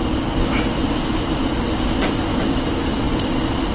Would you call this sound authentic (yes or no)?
yes